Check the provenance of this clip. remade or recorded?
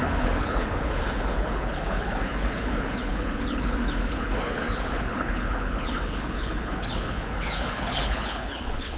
remade